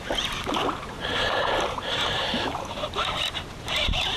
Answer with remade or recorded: remade